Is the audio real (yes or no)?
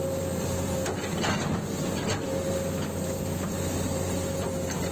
yes